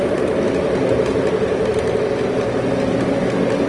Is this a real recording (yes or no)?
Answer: yes